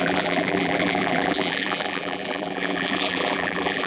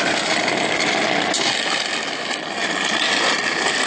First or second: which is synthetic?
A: first